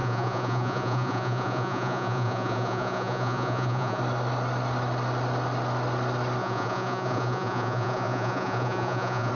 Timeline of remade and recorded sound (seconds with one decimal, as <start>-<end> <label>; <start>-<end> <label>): 0.0-4.0 remade; 4.0-6.4 recorded; 6.4-9.3 remade